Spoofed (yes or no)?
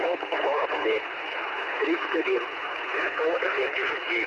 yes